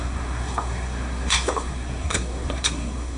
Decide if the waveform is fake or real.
fake